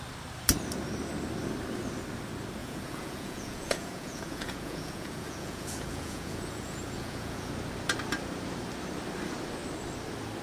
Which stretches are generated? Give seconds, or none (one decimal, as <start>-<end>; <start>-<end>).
2.6-7.5